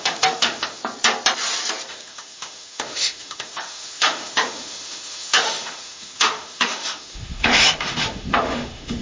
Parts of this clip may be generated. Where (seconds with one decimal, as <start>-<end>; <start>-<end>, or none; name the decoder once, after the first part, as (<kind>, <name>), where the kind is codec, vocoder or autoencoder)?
0.0-0.8 (autoencoder, DAC-VAE); 1.9-9.0